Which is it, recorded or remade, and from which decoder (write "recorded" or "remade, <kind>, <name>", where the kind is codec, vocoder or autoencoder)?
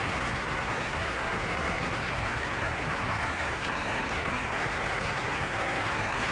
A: remade, codec, SNAC